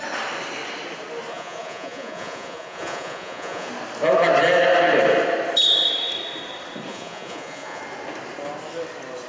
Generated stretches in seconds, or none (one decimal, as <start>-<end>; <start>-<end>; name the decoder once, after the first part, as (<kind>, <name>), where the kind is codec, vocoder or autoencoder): 1.3-3.7 (vocoder, Vocos); 6.9-7.8